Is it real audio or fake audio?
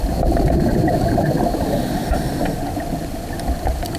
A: real